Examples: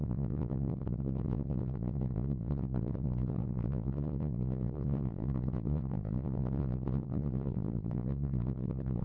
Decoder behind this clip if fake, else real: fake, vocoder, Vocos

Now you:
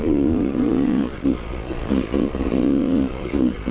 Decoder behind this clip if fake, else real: fake, vocoder, Vocos